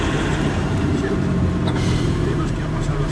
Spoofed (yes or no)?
yes